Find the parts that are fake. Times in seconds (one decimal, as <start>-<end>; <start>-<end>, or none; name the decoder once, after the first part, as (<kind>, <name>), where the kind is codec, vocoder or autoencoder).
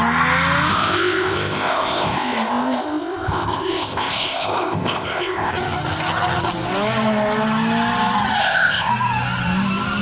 0.7-5.5 (codec, ZipCodec); 8.4-8.9